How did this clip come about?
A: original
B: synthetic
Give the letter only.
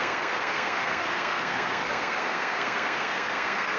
B